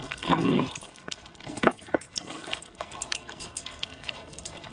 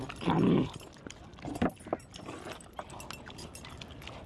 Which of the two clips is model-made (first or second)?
first